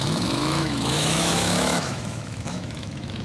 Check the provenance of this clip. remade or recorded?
remade